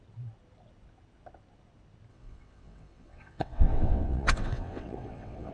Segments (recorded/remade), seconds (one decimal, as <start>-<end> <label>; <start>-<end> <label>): 0.0-2.1 recorded; 2.1-5.5 remade